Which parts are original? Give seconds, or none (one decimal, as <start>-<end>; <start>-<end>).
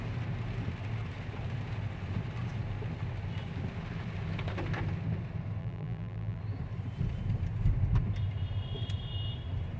0.0-5.6; 6.4-9.8